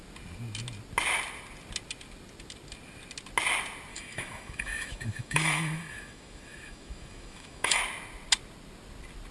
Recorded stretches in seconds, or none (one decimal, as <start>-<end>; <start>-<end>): 0.0-3.9; 7.8-9.3